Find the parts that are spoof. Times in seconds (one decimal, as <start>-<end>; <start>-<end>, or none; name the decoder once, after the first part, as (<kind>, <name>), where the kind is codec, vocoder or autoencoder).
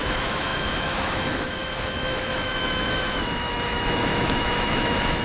0.0-5.2 (autoencoder, DAC-VAE)